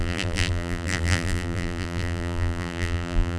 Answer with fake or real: fake